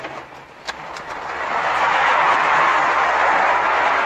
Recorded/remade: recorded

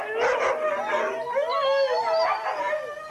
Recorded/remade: recorded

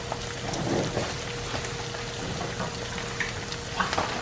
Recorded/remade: recorded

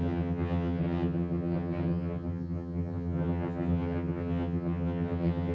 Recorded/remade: remade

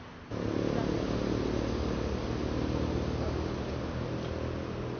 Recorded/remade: recorded